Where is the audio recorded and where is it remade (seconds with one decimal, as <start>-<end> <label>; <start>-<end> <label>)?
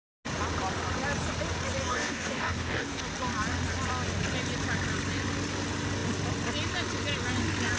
0.0-1.8 recorded; 1.8-3.0 remade; 3.0-7.8 recorded